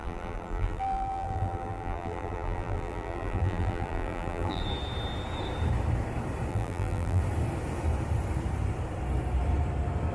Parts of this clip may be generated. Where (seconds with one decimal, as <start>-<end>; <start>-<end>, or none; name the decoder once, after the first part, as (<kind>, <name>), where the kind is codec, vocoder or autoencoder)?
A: 0.0-4.6 (vocoder, BigVGAN v2); 6.5-7.2